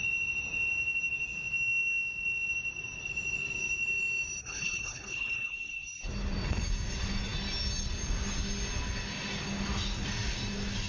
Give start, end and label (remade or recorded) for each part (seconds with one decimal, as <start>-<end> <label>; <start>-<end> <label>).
0.0-4.4 recorded; 4.4-6.1 remade; 6.1-10.9 recorded